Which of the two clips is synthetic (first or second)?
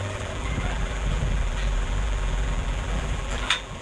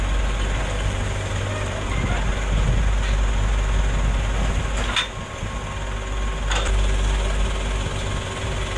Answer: first